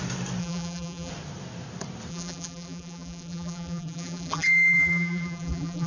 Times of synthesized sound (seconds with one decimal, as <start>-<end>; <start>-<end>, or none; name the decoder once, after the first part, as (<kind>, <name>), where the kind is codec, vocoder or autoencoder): 0.4-1.1 (vocoder, BigVGAN v2); 2.1-5.9